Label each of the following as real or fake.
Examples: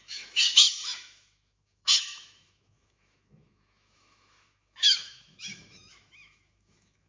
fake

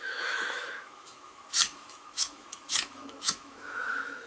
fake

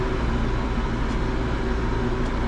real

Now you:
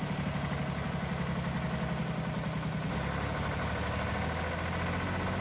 real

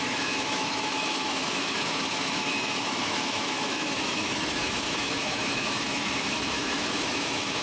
fake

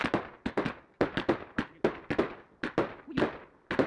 real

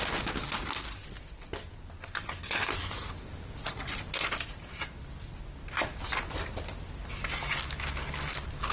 real